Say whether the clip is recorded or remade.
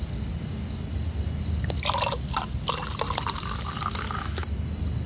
recorded